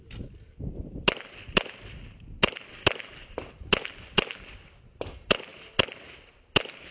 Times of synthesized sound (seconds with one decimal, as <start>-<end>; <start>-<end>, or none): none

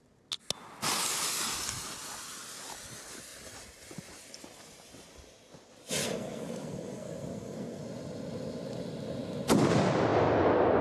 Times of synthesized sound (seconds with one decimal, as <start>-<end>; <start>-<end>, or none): 6.0-7.8

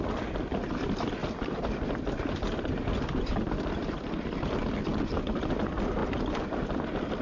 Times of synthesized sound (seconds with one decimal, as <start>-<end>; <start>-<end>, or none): 1.2-2.1; 6.0-6.6